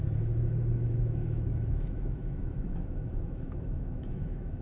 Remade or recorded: remade